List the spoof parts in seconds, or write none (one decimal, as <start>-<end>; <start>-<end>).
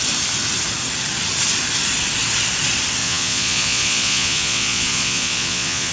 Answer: 3.0-5.9